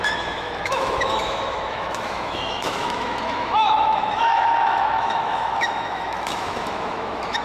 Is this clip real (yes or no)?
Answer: no